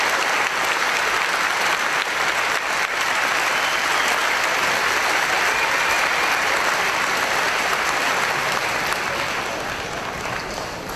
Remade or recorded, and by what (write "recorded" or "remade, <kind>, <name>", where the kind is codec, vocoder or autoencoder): recorded